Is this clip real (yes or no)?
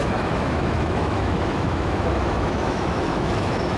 no